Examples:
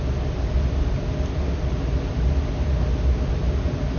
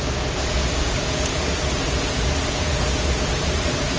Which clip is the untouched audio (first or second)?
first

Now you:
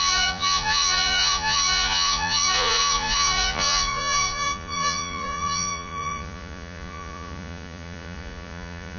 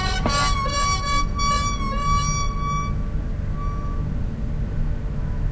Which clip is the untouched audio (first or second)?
second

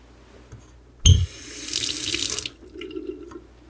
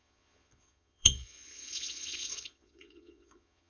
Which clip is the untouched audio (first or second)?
first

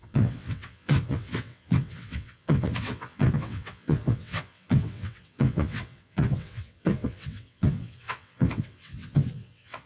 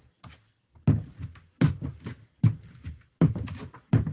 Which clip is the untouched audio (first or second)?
second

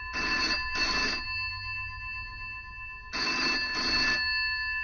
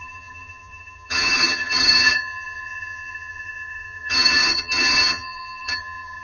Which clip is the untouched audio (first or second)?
first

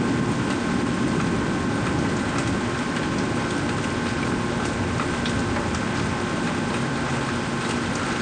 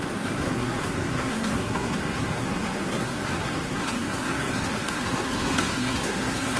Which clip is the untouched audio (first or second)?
first